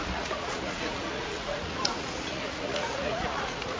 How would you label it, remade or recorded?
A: remade